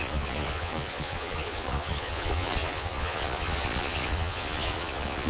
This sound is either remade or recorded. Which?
remade